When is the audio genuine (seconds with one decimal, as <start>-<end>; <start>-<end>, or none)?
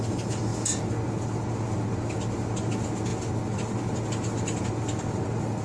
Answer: 0.0-5.6